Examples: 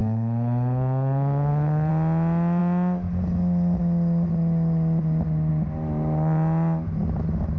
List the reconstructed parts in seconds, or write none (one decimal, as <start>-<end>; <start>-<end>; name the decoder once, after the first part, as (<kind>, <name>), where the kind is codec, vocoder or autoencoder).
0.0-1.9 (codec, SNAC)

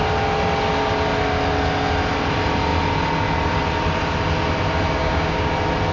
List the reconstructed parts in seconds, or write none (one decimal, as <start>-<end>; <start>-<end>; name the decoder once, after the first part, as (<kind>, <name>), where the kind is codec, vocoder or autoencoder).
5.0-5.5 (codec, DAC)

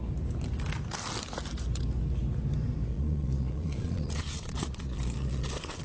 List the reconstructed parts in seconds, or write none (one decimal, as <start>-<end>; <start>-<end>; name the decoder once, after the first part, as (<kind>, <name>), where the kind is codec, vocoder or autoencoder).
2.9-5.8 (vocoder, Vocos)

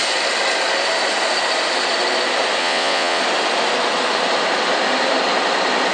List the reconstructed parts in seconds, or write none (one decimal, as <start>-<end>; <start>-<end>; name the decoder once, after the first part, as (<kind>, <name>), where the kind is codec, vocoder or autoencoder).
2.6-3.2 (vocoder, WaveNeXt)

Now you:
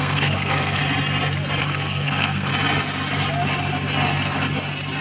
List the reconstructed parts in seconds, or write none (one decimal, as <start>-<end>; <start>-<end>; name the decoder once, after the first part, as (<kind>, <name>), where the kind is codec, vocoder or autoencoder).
0.0-0.8 (codec, SNAC); 1.6-2.5

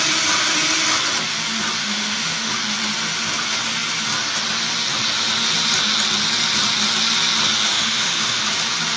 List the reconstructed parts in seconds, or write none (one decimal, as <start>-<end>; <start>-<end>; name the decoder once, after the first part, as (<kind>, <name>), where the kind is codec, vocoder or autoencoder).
1.8-2.5 (autoencoder, DAC-VAE); 7.7-8.4

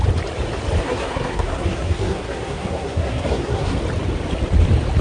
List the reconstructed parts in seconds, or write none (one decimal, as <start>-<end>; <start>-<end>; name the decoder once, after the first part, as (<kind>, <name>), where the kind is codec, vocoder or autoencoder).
0.8-3.8 (codec, SNAC)